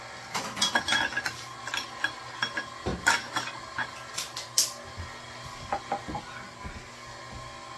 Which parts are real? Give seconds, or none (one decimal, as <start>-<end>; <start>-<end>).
0.0-7.8